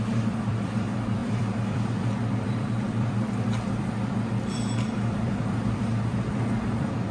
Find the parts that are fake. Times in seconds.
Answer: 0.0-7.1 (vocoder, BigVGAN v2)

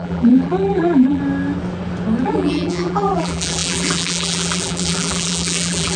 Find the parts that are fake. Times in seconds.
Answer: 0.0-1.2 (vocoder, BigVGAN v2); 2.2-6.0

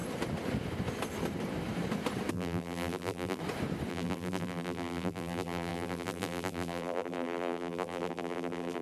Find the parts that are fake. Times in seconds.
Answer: 2.3-3.4 (vocoder, BigVGAN v2); 3.9-8.8